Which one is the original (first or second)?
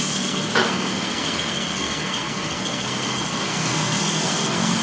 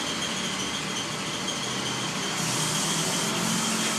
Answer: second